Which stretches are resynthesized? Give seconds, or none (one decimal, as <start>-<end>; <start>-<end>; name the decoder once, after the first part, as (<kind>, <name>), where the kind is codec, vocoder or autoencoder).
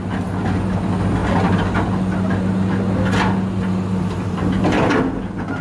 none